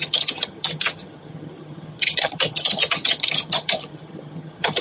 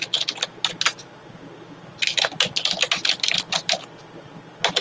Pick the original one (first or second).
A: second